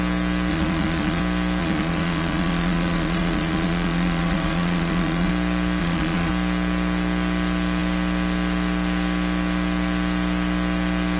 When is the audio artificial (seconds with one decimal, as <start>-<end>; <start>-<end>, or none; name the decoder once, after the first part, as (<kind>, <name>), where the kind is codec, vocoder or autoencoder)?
0.5-1.2 (vocoder, Vocos); 1.6-5.3; 5.8-6.3